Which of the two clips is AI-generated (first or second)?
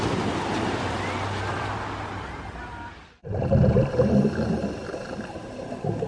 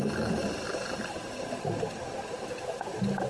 first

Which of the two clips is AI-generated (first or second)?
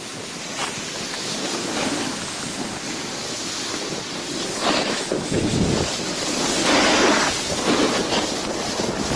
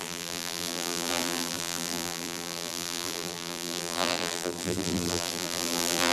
second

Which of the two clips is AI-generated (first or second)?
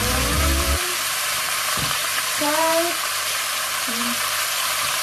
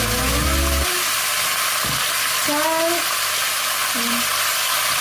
first